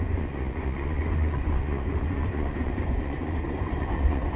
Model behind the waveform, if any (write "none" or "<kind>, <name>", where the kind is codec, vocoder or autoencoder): vocoder, Vocos